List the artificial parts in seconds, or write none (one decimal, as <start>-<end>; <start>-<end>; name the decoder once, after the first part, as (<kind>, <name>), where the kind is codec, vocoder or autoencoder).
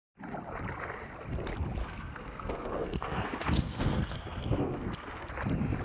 1.8-5.3 (codec, SNAC)